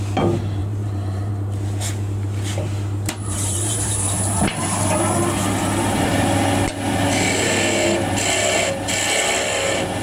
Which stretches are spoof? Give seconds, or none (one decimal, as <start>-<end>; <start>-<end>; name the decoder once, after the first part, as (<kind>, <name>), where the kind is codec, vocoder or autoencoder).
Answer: 0.6-1.3 (vocoder, BigVGAN v2); 3.2-5.0